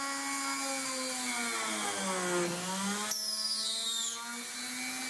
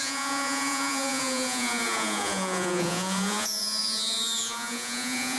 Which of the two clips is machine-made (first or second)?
second